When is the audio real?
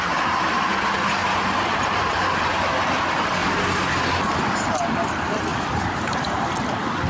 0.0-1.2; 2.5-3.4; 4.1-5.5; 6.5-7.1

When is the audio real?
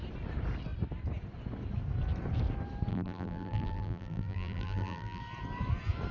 0.0-2.9; 5.2-6.1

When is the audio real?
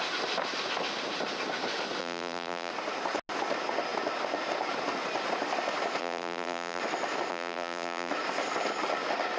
0.0-2.0; 2.7-6.0; 6.8-7.3; 8.1-9.4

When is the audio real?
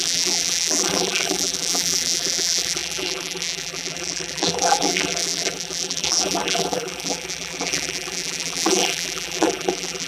none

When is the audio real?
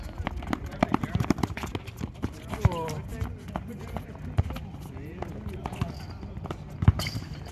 0.0-7.5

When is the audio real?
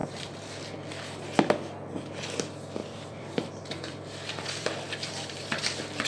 0.5-2.8; 5.6-6.1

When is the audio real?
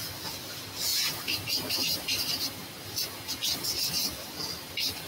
0.0-0.9; 2.7-5.1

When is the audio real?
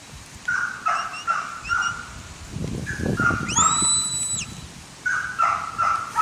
0.0-1.1; 2.5-6.2